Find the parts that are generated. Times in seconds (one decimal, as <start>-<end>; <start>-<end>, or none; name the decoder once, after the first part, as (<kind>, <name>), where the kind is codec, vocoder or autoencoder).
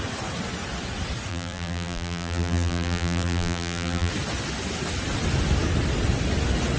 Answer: 1.3-4.1 (vocoder, BigVGAN v2)